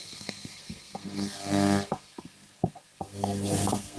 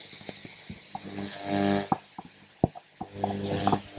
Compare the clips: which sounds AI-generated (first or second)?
first